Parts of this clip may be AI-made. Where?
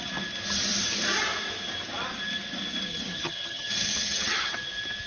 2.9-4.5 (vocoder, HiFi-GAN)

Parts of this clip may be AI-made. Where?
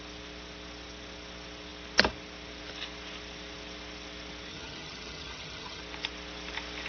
4.5-5.8 (vocoder, HiFi-GAN)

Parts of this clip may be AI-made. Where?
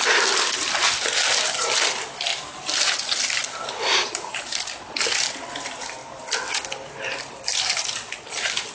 none